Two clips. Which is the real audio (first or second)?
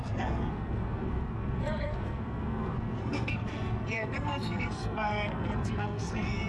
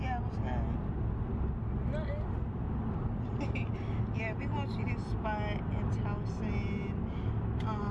second